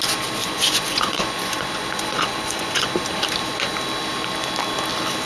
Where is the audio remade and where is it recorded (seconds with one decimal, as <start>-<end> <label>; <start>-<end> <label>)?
0.0-0.4 recorded; 0.4-2.9 remade; 2.9-5.3 recorded